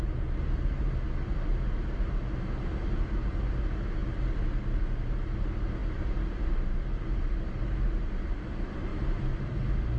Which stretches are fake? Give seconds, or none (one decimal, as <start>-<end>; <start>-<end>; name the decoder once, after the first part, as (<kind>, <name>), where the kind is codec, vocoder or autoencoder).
8.9-9.5 (vocoder, BigVGAN v2)